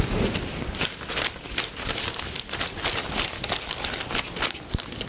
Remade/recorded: recorded